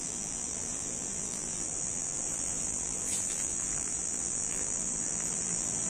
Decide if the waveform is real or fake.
fake